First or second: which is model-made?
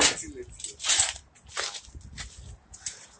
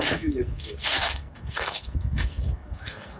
second